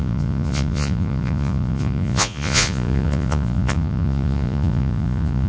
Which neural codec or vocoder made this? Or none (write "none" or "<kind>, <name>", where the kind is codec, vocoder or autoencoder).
vocoder, Vocos